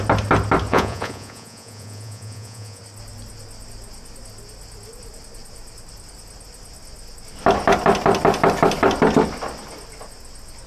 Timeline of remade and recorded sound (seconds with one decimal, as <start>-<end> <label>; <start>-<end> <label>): 0.0-0.7 recorded; 0.7-2.8 remade; 2.8-10.7 recorded